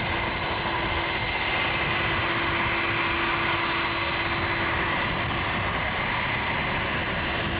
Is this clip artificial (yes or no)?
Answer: no